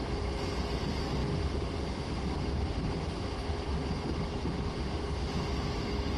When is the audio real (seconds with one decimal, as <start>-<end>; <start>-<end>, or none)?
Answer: 0.0-6.2

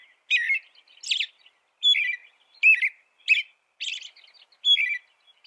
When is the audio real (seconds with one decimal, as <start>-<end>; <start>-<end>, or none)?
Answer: 0.0-5.5

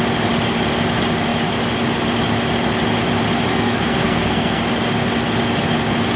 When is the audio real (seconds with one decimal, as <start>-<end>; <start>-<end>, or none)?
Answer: 0.0-3.5; 4.6-6.2

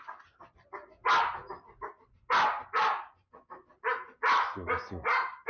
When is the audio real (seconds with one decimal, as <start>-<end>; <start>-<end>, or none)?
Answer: 0.0-5.5

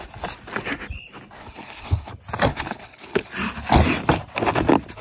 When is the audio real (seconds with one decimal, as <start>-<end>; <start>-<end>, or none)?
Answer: 0.0-1.4; 2.1-2.5; 3.3-5.0

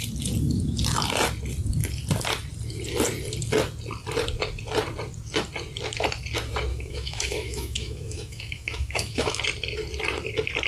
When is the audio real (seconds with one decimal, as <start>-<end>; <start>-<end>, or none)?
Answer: 0.0-6.7; 9.4-10.7